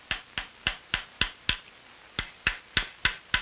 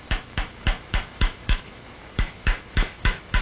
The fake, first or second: second